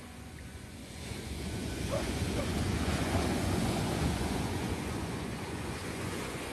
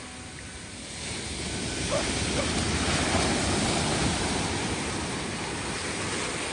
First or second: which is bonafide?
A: second